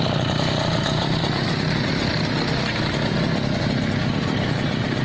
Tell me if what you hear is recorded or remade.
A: recorded